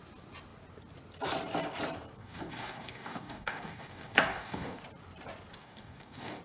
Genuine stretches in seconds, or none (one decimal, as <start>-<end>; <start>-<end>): 0.0-2.2; 4.8-5.5